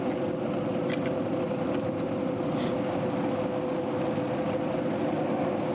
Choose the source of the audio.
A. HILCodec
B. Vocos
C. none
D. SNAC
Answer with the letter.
C